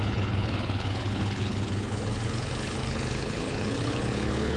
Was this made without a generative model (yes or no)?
no